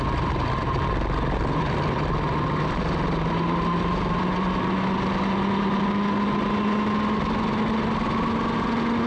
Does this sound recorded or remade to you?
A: recorded